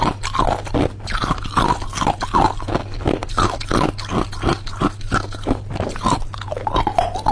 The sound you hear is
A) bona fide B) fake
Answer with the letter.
A